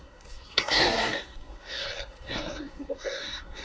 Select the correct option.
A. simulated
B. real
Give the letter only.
A